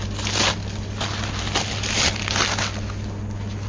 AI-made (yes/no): no